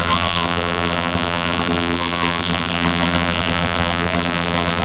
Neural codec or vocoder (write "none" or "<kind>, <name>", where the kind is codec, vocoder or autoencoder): vocoder, BigVGAN v2